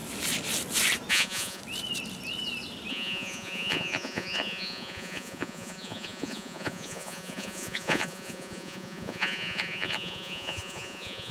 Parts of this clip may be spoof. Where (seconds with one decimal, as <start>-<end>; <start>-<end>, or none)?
1.1-1.6; 2.9-11.3